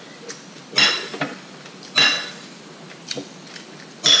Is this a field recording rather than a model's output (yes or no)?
yes